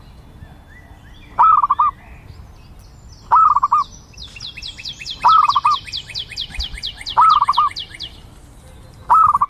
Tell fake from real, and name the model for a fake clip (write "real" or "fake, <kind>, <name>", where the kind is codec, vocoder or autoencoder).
real